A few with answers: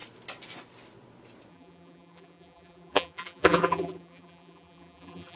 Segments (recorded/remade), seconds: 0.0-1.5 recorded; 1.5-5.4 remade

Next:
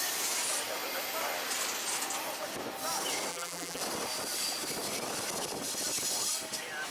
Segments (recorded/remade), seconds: 0.0-3.3 recorded; 3.3-3.8 remade; 3.8-6.9 recorded